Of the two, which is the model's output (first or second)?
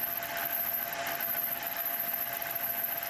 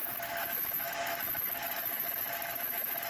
second